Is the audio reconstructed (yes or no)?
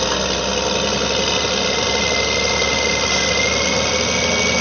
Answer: no